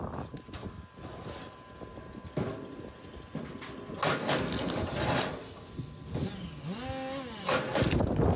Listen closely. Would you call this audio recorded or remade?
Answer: recorded